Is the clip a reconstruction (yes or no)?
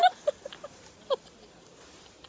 no